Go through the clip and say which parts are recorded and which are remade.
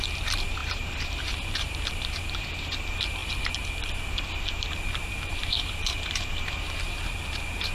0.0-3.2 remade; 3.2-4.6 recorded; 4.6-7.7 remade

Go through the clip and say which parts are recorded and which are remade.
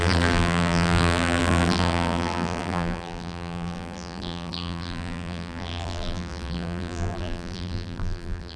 0.0-8.6 remade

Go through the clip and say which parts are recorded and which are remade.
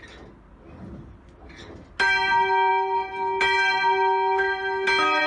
0.0-5.3 recorded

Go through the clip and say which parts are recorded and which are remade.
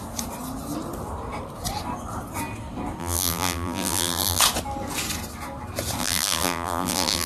0.0-3.0 recorded; 3.0-4.4 remade; 4.4-6.0 recorded; 6.0-7.3 remade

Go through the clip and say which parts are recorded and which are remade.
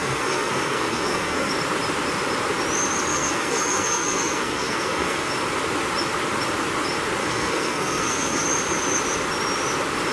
0.0-1.5 remade; 1.5-3.1 recorded; 3.1-5.3 remade; 5.3-7.2 recorded; 7.2-8.4 remade; 8.4-10.1 recorded